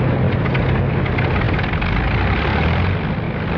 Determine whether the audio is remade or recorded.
recorded